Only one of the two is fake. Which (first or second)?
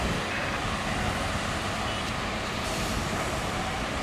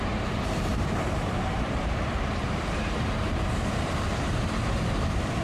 second